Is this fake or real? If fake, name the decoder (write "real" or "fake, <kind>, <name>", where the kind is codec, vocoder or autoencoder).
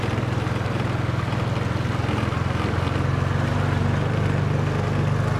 real